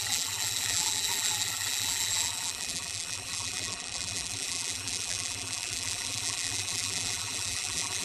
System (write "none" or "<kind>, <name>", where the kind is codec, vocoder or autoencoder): vocoder, BigVGAN v2